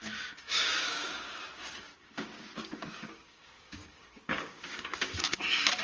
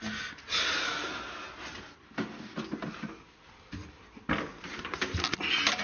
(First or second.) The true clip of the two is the second